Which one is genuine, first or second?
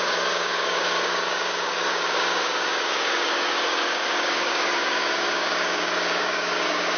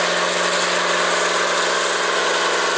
second